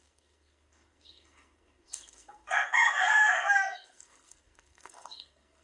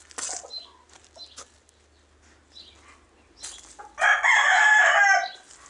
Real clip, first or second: second